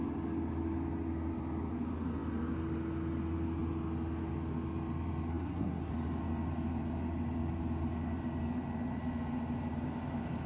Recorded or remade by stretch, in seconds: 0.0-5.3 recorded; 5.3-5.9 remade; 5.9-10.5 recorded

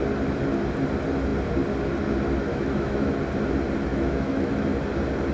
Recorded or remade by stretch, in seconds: 0.0-2.5 recorded; 2.5-3.1 remade; 3.1-3.9 recorded; 3.9-4.8 remade; 4.8-5.3 recorded

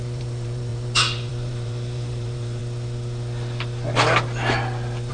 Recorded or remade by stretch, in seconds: 0.0-2.6 remade; 2.6-5.1 recorded

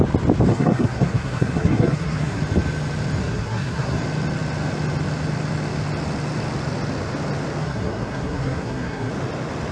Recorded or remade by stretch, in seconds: 0.0-0.5 recorded; 0.5-2.4 remade; 2.4-3.2 recorded; 3.2-4.0 remade; 4.0-7.6 recorded; 7.6-9.1 remade; 9.1-9.7 recorded

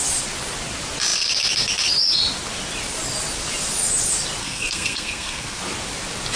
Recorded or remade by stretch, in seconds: 0.0-4.4 recorded; 4.4-5.6 remade; 5.6-6.4 recorded

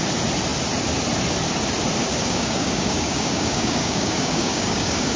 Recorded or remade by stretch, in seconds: 0.0-2.1 recorded; 2.1-5.2 remade